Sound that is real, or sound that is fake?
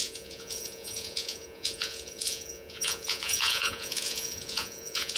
fake